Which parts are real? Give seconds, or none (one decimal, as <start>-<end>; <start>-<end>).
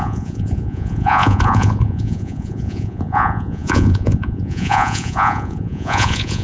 none